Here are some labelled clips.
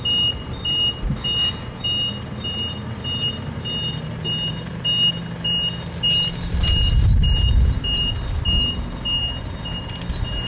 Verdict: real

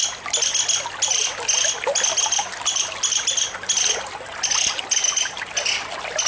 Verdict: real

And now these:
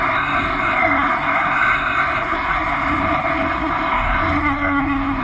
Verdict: fake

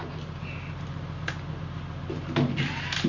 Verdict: real